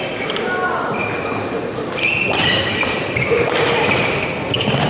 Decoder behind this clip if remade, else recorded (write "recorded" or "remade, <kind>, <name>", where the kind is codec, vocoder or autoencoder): recorded